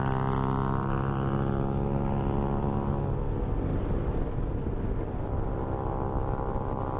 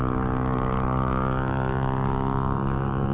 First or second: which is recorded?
first